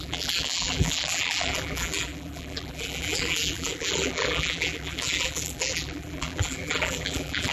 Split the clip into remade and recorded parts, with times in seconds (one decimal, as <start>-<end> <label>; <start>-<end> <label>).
0.0-7.5 remade